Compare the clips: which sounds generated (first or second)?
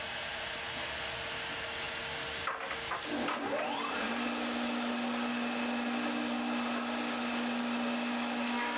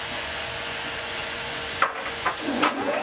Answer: second